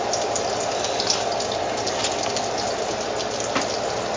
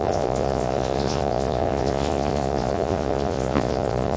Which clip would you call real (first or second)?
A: first